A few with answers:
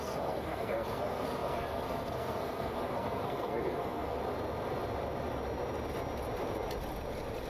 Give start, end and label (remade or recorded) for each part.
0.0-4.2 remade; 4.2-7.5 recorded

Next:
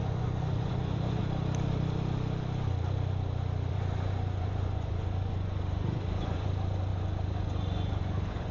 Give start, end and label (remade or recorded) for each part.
0.0-1.2 remade; 1.2-3.7 recorded; 3.7-8.5 remade